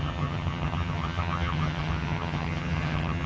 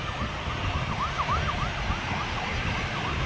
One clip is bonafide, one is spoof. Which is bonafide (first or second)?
second